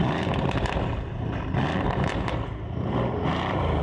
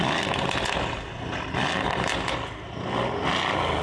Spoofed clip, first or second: first